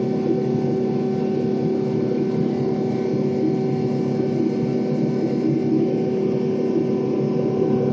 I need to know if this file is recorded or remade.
recorded